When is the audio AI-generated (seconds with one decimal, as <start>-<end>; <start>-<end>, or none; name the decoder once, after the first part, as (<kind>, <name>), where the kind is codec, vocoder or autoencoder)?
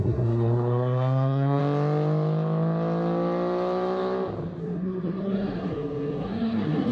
0.0-1.6 (codec, SNAC); 4.6-6.9